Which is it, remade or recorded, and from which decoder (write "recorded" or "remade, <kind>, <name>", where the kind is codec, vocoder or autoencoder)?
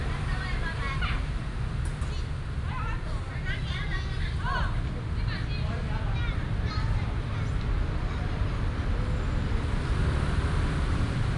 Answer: recorded